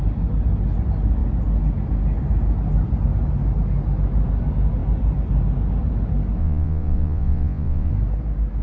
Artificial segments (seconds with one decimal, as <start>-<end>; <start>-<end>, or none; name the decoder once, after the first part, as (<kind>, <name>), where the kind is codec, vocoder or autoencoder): 6.4-7.9 (vocoder, Vocos)